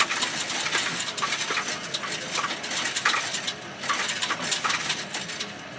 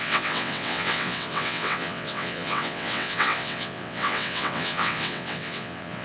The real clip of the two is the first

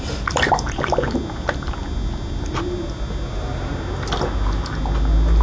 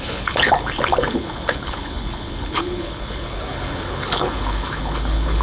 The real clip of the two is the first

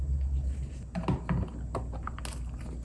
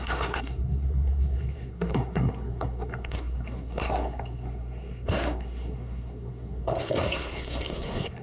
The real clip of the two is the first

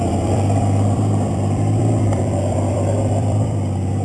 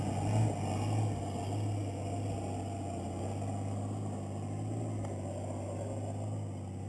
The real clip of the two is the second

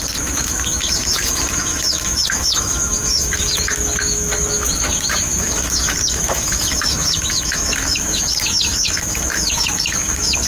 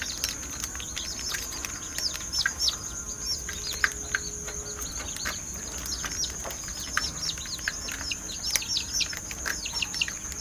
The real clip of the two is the second